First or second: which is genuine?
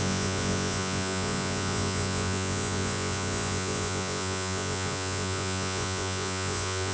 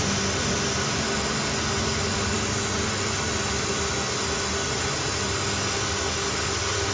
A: second